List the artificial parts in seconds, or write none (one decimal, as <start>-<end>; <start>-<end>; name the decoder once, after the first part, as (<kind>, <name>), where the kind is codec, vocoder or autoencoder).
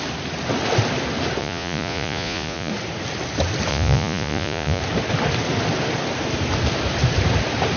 1.4-2.7 (vocoder, Vocos); 3.7-4.8